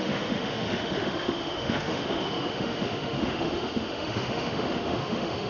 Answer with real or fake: fake